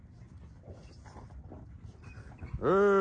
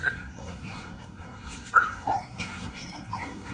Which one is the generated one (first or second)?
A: second